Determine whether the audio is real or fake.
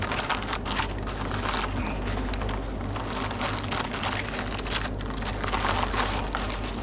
real